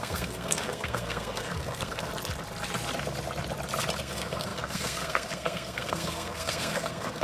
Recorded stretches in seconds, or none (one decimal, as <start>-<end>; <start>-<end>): 2.1-4.0